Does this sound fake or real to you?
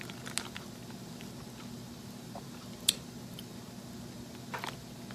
real